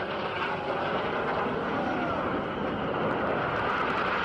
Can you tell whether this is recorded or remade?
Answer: recorded